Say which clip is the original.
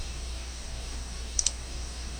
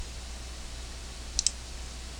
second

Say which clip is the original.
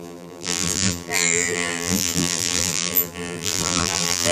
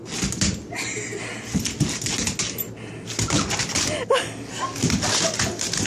second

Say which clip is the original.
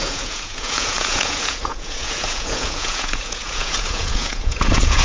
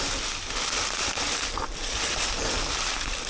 second